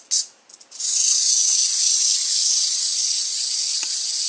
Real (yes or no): yes